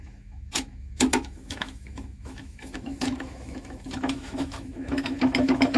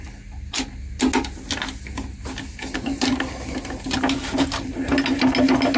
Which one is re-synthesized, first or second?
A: first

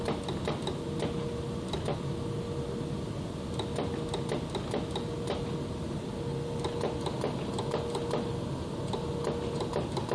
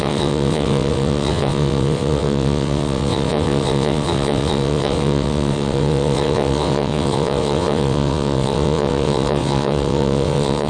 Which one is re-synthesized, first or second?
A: second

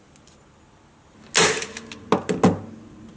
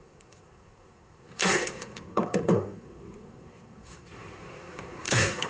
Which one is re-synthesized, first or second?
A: second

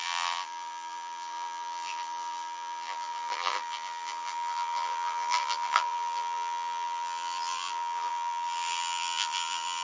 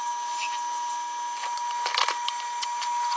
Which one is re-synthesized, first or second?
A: first